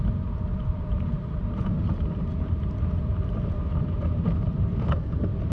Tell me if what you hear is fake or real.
fake